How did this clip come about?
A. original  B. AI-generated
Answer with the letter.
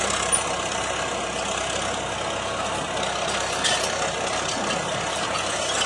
A